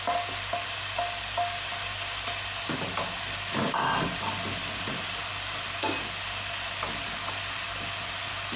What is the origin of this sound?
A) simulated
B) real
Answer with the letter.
B